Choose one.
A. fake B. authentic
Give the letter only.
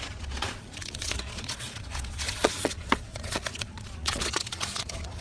A